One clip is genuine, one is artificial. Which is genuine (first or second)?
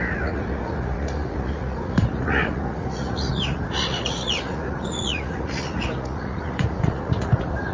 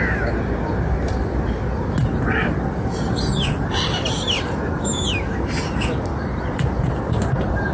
second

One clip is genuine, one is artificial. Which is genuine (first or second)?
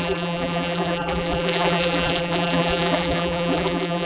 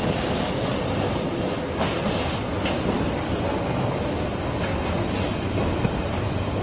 second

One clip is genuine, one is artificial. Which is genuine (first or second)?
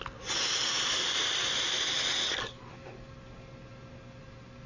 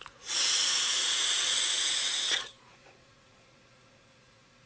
first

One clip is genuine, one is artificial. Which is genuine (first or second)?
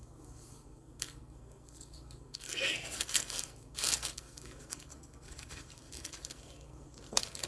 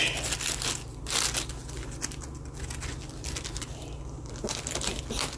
second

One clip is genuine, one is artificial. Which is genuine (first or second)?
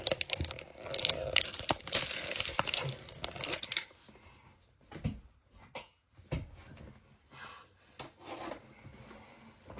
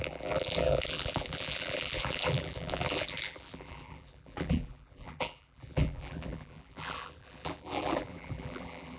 first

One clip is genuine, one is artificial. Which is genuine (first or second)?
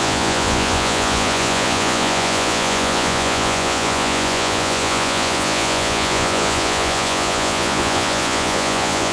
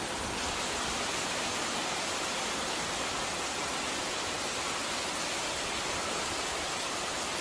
second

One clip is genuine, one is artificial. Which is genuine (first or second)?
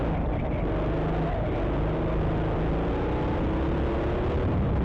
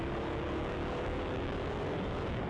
first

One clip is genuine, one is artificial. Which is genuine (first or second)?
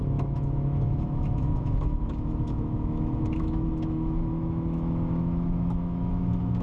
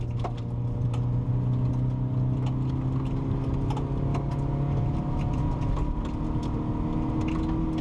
second